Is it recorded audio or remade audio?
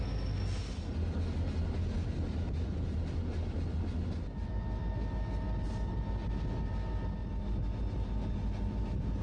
recorded